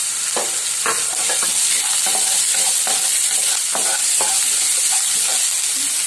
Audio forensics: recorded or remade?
recorded